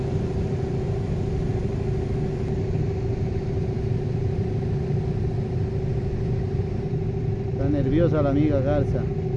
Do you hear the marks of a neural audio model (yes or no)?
no